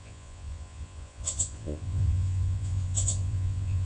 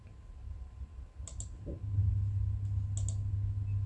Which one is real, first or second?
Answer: second